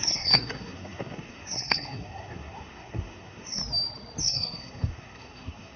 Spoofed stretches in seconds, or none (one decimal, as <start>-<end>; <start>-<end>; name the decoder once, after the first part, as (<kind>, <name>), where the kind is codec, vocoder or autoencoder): 0.0-3.6 (codec, SNAC); 4.2-5.8

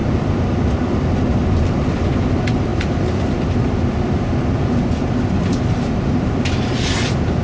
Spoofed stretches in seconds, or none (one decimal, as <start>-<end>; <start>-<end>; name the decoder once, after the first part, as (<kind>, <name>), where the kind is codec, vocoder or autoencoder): 1.9-7.4 (vocoder, BigVGAN v2)

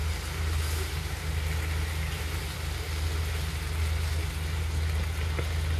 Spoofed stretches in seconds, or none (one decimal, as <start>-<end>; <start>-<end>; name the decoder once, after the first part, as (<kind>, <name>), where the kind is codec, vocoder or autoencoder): none

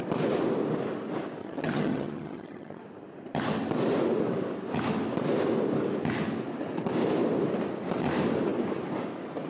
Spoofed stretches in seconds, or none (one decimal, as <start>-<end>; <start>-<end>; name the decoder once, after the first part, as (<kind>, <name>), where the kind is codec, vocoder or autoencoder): 1.4-2.8 (vocoder, HiFi-GAN)